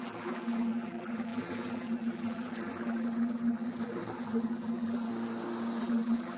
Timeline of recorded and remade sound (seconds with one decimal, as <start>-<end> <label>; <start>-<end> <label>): 0.0-5.1 remade; 5.1-5.8 recorded; 5.8-6.4 remade